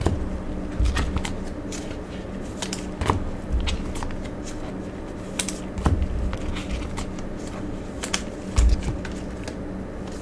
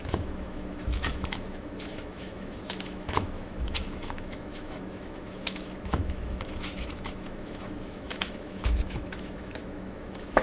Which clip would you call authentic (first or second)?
first